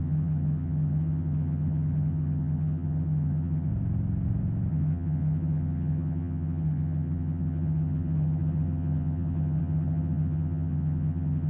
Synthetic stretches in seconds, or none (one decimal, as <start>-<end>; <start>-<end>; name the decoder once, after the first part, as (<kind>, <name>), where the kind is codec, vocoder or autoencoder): 0.0-3.7 (vocoder, HiFi-GAN); 4.7-11.5